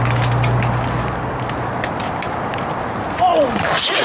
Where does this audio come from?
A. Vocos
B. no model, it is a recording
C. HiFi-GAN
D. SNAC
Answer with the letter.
B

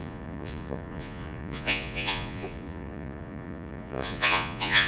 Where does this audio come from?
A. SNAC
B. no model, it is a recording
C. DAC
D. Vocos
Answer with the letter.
D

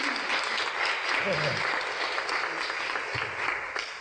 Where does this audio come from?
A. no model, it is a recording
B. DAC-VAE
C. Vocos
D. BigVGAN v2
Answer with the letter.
A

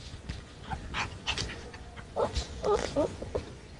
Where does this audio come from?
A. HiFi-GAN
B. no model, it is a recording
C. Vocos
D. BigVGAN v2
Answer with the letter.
C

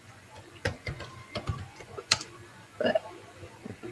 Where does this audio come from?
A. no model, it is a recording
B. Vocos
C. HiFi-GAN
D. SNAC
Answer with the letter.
B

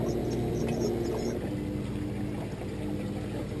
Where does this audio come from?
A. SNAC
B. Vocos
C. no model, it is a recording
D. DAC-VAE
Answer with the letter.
C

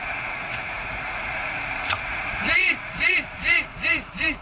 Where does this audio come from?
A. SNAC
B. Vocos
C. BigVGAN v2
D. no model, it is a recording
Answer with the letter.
B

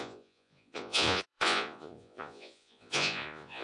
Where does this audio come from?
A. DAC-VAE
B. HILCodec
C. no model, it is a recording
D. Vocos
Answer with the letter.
D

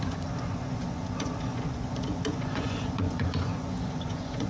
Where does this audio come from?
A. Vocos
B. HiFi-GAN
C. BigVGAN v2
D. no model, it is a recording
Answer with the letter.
A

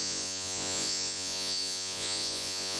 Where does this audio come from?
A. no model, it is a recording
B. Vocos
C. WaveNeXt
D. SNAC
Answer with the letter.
B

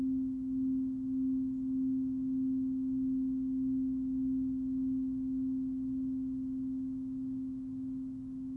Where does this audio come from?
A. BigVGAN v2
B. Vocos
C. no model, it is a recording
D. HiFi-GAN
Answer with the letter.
C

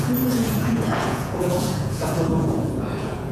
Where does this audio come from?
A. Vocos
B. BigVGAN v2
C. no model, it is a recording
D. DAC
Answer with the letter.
A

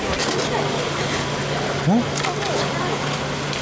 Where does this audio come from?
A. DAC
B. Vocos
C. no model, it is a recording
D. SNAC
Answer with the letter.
C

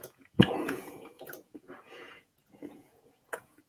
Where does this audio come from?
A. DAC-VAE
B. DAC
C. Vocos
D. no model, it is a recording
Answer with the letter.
C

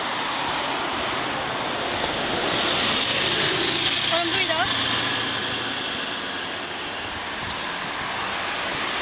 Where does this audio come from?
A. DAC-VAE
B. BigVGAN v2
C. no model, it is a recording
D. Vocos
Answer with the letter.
C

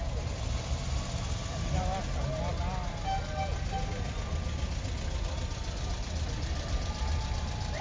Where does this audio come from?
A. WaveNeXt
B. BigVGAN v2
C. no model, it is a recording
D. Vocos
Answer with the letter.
C